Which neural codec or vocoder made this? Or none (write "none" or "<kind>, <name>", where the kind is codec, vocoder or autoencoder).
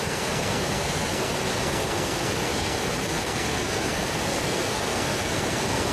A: codec, SNAC